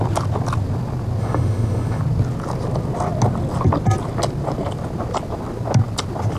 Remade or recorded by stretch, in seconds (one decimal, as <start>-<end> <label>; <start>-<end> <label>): 0.0-1.2 recorded; 1.2-2.0 remade; 2.0-6.4 recorded